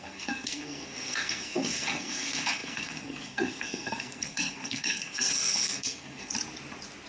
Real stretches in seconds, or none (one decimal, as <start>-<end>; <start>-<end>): 6.3-7.1